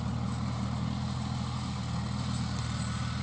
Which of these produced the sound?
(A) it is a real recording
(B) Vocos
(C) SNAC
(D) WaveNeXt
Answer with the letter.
A